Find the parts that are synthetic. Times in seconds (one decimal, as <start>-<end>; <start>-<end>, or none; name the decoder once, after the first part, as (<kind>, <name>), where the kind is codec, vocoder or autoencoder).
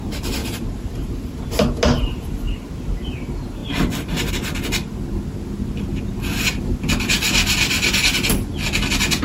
0.4-1.5 (vocoder, BigVGAN v2)